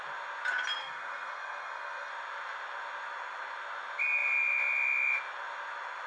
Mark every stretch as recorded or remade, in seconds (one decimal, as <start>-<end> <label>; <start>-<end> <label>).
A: 0.0-0.8 recorded; 0.8-2.1 remade; 2.1-6.1 recorded